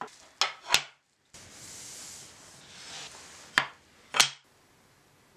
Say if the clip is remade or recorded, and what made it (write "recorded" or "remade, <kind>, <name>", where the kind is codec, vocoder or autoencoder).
recorded